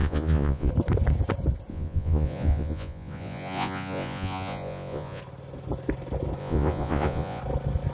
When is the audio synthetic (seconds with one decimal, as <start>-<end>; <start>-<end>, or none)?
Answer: 0.0-0.7; 1.7-5.2; 6.4-7.4

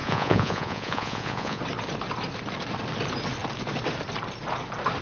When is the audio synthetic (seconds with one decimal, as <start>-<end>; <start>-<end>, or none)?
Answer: 0.0-1.6